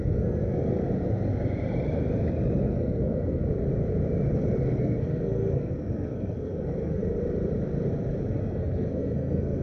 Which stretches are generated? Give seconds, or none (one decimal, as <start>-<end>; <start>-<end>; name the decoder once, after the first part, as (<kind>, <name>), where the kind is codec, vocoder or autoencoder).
0.0-0.8 (codec, SNAC); 2.6-3.4; 4.8-7.0; 8.4-9.6